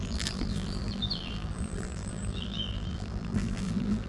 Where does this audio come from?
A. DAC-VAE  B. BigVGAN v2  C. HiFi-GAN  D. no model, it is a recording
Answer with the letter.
B